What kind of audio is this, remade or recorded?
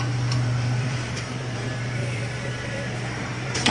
remade